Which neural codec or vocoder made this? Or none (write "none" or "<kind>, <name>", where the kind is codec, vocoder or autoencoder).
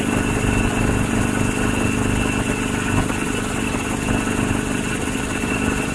none